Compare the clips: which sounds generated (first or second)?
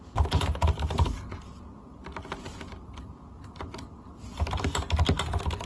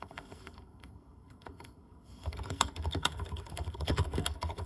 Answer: second